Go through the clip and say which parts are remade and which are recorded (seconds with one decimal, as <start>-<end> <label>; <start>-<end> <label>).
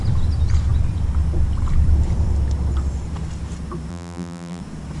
0.0-3.9 recorded; 3.9-4.6 remade; 4.6-5.0 recorded